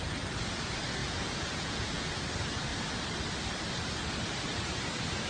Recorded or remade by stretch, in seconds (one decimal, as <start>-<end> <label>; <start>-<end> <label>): 0.0-1.0 recorded; 1.0-2.2 remade; 2.2-5.3 recorded